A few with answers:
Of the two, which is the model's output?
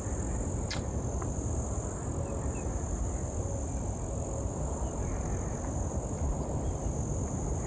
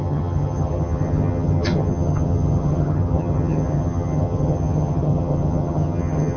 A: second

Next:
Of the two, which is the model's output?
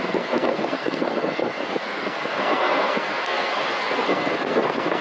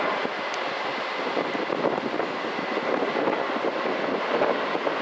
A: first